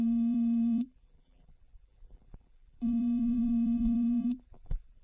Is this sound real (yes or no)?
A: no